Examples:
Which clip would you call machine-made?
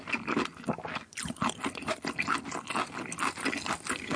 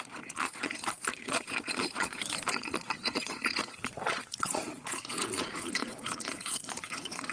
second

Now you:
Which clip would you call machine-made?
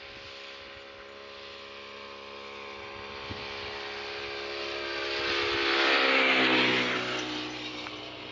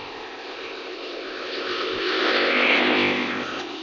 second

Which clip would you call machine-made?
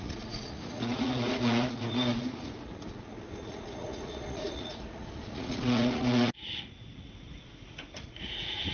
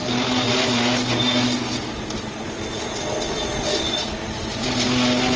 first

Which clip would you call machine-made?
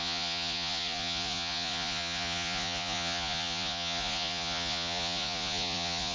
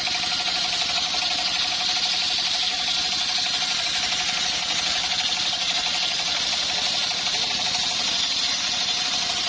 first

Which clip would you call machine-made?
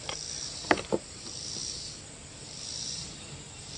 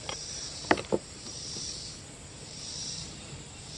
second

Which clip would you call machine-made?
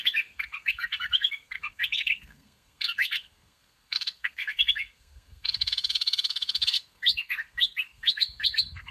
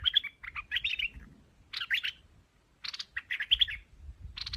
first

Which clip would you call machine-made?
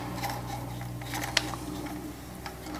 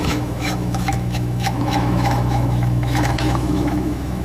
second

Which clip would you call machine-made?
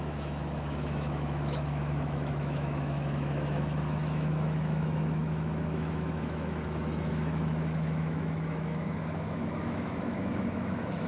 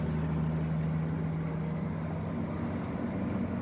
first